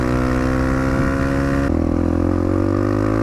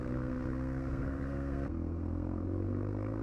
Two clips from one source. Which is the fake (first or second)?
second